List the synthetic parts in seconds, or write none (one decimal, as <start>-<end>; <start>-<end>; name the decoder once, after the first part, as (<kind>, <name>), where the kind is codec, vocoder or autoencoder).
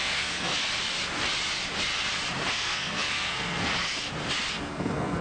0.0-0.5 (codec, SNAC); 2.5-3.7; 4.5-5.2